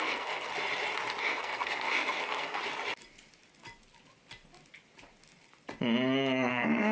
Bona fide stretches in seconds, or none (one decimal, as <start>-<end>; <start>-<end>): 0.5-1.2; 2.6-6.5